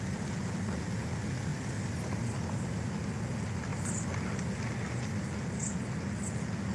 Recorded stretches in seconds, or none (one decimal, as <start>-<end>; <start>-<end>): 0.0-6.7